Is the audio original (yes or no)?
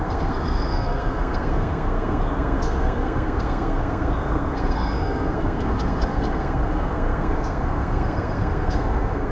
no